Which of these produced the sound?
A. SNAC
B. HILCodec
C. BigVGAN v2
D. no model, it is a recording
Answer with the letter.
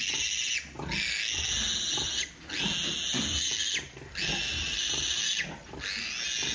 D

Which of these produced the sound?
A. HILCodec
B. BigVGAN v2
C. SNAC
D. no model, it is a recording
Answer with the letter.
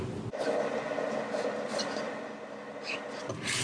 D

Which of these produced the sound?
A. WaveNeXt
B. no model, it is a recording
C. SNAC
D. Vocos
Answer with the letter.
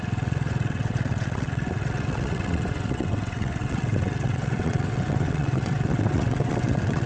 A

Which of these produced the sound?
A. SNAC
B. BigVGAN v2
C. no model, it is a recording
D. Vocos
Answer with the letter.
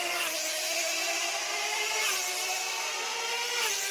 C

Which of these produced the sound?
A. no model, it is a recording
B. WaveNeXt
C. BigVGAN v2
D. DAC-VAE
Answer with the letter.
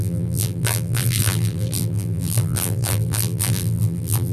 C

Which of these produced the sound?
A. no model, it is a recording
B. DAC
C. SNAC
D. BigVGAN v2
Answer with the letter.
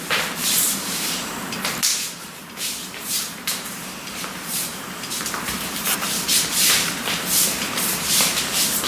D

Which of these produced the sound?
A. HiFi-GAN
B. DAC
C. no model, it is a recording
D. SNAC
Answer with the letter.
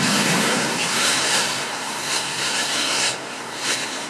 D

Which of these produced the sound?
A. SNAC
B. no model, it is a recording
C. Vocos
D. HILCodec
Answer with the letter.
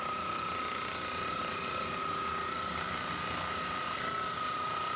B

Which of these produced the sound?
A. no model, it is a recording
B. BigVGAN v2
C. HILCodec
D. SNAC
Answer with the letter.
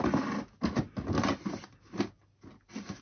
A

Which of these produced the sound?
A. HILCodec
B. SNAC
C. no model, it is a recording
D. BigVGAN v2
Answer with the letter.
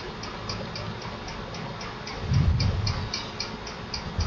C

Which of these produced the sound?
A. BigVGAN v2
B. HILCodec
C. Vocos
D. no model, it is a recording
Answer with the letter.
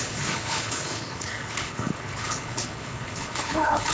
B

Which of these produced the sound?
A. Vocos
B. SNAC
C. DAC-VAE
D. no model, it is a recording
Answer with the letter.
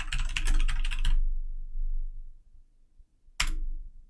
D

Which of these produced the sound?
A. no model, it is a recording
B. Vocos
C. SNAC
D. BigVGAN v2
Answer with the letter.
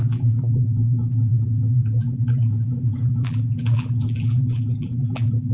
D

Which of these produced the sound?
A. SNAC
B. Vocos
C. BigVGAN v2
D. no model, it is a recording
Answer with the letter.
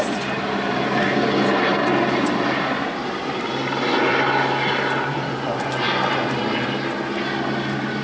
D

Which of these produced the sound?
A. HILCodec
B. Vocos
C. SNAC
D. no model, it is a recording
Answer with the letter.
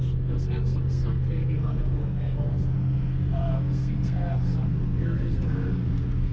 C